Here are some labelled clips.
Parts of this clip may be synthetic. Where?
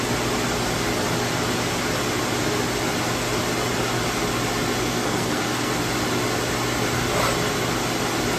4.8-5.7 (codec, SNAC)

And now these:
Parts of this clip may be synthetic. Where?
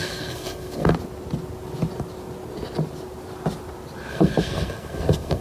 0.0-0.9 (codec, SNAC); 4.1-5.4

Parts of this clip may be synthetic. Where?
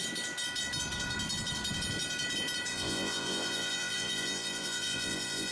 2.7-5.5 (vocoder, Vocos)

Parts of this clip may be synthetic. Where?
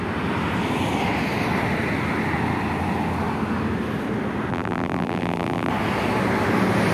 4.5-5.7 (vocoder, BigVGAN v2)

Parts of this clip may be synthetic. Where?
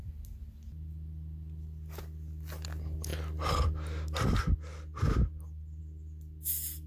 none